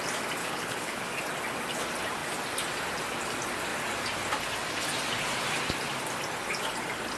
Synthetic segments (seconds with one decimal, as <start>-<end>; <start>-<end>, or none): 0.4-1.0